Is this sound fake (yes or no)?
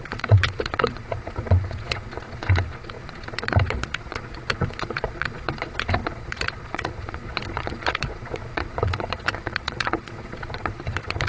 yes